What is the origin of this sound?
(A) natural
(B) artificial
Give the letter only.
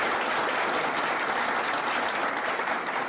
A